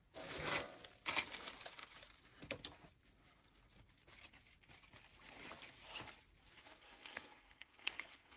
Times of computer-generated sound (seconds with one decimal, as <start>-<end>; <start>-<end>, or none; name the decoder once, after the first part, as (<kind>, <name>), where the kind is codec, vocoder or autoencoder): 6.6-8.4 (codec, SNAC)